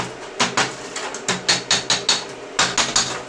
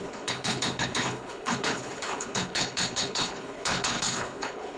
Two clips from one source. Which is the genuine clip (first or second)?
first